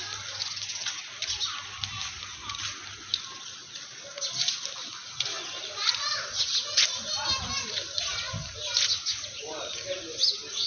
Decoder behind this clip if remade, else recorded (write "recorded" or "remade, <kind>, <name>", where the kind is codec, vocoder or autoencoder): recorded